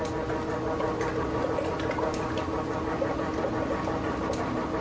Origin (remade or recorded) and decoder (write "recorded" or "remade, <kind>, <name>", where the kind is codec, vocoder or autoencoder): recorded